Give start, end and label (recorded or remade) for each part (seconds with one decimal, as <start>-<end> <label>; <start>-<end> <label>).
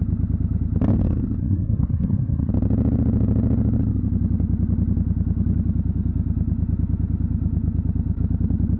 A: 0.0-1.4 recorded; 1.4-2.5 remade; 2.5-8.8 recorded